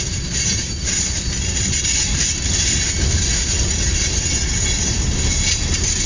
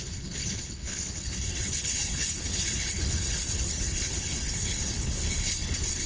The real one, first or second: first